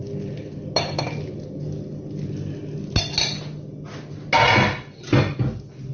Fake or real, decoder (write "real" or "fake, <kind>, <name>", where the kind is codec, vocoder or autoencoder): real